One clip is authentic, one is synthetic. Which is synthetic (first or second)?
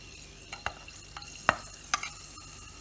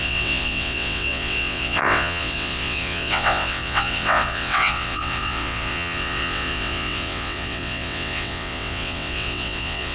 second